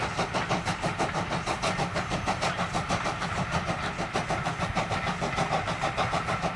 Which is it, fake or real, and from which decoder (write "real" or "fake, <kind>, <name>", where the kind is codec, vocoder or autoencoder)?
real